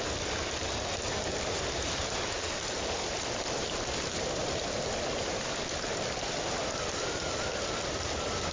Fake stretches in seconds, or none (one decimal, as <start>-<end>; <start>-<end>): none

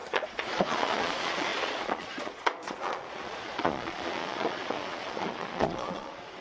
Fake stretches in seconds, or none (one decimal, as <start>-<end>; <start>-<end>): 0.0-6.4

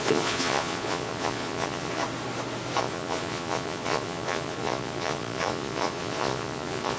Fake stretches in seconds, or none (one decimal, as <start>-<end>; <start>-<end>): 0.0-2.0; 2.8-7.0